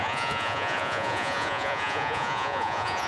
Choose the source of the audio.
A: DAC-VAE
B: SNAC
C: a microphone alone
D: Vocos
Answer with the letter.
D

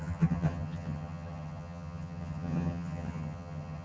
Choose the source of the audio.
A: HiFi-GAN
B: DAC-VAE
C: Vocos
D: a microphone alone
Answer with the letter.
A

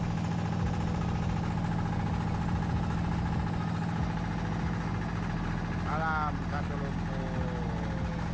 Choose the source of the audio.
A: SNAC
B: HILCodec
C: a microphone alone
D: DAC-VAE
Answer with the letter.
C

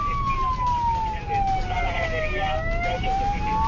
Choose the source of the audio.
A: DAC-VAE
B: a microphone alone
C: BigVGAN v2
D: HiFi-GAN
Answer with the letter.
B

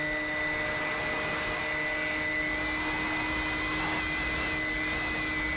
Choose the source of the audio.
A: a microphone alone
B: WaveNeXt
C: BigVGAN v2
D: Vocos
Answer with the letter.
A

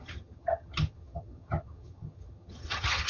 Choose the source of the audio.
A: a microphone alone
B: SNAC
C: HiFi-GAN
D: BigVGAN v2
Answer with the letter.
C